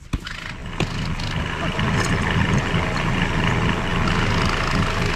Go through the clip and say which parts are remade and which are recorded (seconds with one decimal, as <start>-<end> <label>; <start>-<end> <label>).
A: 0.0-5.2 recorded